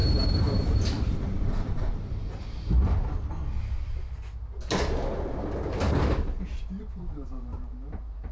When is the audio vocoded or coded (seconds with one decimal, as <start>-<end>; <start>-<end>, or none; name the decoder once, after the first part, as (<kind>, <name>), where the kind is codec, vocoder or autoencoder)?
0.0-2.2 (vocoder, BigVGAN v2); 6.5-8.3